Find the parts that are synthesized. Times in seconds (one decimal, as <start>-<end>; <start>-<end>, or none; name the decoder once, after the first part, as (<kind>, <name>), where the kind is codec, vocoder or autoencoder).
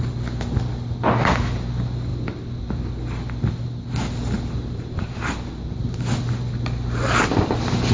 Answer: none